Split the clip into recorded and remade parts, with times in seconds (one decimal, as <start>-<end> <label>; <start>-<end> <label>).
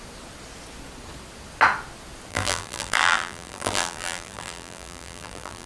0.0-2.3 recorded; 2.3-5.7 remade